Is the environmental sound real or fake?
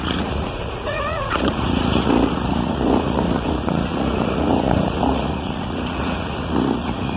fake